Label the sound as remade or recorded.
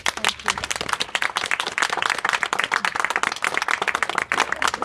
recorded